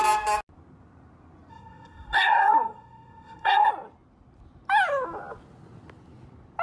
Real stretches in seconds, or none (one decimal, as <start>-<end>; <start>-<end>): 0.0-1.5; 3.7-6.6